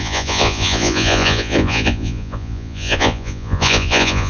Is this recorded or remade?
remade